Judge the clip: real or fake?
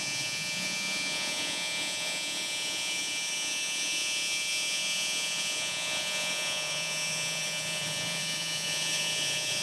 fake